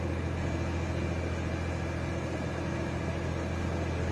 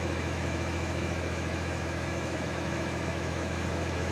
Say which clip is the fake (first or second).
second